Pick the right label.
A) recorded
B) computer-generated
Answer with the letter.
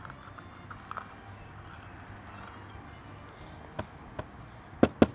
A